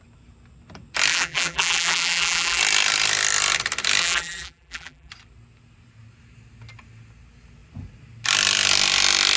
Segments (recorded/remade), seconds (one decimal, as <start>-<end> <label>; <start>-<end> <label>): 0.0-1.1 recorded; 1.1-2.6 remade; 2.6-4.0 recorded; 4.0-5.1 remade; 5.1-9.4 recorded